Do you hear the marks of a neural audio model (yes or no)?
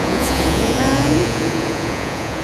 yes